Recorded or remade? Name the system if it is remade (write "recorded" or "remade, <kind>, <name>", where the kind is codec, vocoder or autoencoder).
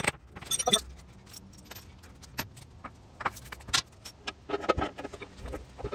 recorded